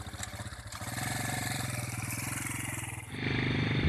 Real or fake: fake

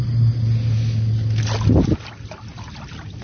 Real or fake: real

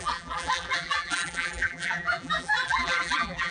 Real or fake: fake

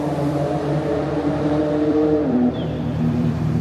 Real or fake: fake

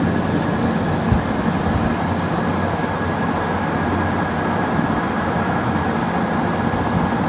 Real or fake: real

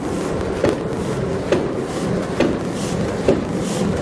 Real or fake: real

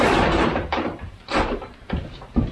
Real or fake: fake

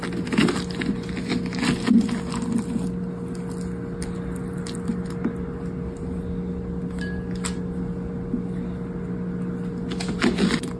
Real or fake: real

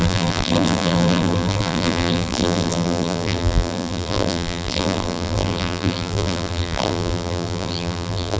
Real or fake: fake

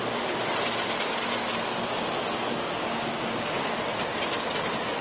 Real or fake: real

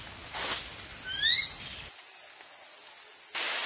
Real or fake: real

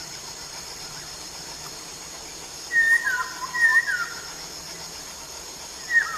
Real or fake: fake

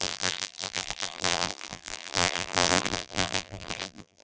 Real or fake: fake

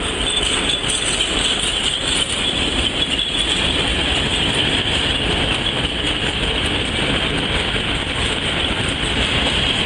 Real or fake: fake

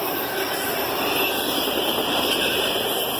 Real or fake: real